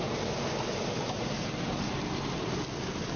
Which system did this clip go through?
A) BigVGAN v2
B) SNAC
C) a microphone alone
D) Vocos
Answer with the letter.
C